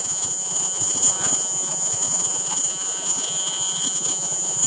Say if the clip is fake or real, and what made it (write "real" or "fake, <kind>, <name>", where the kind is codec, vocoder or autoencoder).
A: fake, vocoder, Vocos